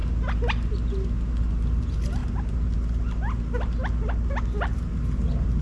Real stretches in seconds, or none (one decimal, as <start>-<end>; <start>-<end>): 0.0-5.6